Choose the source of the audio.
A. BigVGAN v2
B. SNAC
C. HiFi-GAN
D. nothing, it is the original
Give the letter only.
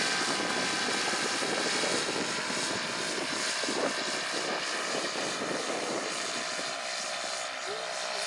A